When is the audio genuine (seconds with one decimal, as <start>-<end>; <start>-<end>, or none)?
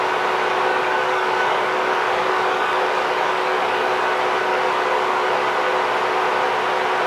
0.0-0.7; 3.9-4.5; 5.3-7.1